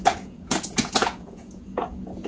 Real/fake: fake